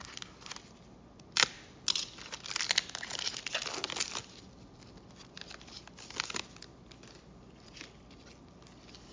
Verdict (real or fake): real